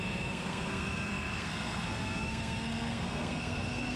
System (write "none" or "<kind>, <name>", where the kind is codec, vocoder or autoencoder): codec, SNAC